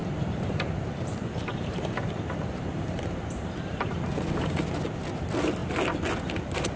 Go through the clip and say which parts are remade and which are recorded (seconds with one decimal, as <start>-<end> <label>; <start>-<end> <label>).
0.0-4.0 remade; 4.0-6.8 recorded